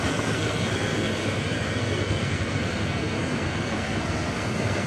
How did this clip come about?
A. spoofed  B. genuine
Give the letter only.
A